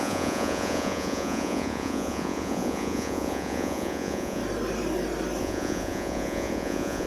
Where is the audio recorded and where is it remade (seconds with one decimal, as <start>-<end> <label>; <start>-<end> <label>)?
0.0-4.4 remade; 4.4-5.4 recorded; 5.4-7.1 remade